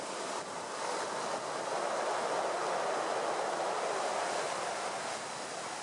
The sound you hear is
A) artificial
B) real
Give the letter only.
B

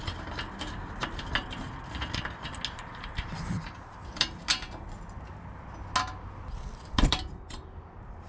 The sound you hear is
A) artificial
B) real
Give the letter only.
B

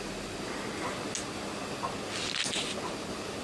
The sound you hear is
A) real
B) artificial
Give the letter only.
A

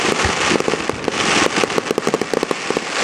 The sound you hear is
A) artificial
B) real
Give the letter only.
B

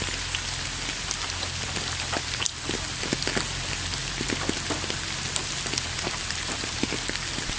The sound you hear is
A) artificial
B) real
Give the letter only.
B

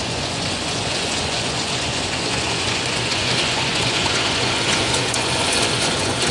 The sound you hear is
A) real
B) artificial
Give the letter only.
B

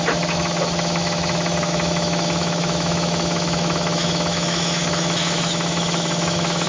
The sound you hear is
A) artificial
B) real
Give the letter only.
A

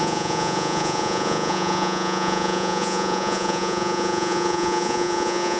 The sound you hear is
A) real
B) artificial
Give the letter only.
B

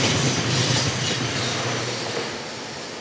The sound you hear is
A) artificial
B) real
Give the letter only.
B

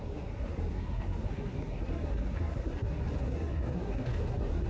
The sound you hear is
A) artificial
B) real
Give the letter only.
A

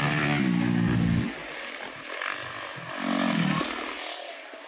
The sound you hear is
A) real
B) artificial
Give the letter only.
A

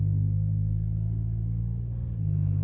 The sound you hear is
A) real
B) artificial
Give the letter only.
B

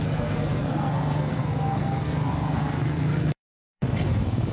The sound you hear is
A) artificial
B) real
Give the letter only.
A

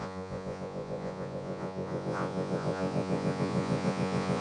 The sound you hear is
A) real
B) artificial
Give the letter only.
B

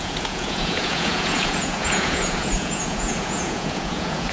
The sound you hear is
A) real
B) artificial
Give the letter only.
B